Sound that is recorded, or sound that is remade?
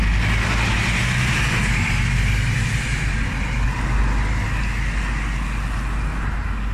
recorded